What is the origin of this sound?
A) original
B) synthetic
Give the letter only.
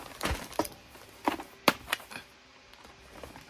A